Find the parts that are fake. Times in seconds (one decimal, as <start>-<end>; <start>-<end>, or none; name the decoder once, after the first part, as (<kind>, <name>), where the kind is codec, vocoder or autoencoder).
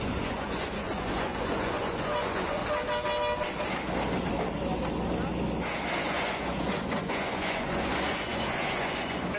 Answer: 0.0-2.6 (vocoder, Vocos); 6.0-9.4